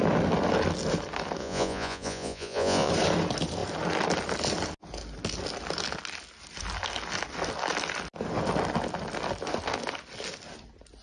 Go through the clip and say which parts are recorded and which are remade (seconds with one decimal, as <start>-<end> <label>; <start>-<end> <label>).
0.0-1.4 recorded; 1.4-2.9 remade; 2.9-11.0 recorded